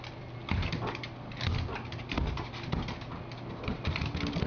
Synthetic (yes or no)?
no